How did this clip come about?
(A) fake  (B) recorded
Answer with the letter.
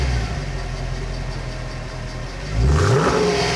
B